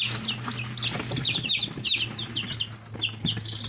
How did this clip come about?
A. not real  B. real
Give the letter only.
B